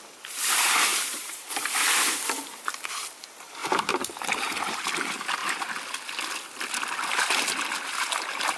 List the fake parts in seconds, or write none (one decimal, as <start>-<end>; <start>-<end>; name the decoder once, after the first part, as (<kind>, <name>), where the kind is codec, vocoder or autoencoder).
0.9-1.6 (vocoder, BigVGAN v2); 3.6-4.9